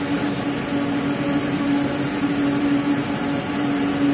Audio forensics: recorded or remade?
recorded